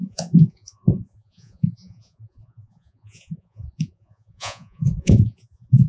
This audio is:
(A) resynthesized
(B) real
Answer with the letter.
A